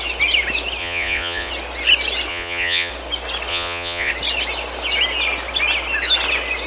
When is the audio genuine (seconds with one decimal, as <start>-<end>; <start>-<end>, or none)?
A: 0.0-0.8; 1.5-2.3; 2.9-3.5; 4.1-6.7